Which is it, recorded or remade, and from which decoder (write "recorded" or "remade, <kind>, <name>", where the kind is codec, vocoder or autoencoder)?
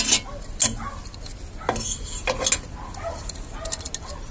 recorded